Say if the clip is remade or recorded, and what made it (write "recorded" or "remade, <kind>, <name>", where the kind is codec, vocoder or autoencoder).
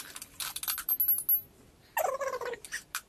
recorded